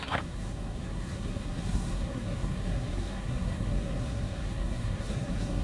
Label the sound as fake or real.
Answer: fake